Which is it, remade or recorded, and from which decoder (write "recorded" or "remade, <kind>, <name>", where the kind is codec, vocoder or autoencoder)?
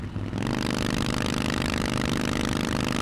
recorded